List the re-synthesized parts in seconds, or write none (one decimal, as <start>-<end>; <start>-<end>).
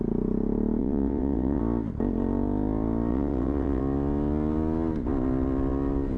0.8-1.6; 3.1-3.8